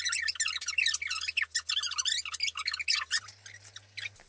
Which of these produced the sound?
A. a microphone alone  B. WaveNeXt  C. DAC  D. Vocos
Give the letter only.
A